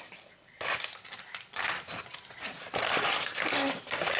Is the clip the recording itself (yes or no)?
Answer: yes